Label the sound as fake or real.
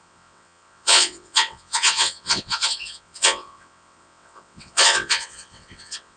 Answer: fake